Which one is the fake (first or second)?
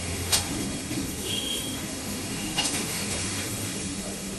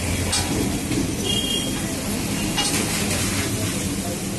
first